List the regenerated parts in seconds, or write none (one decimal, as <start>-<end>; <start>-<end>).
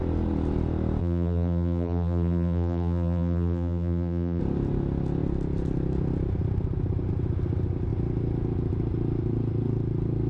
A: 1.0-4.4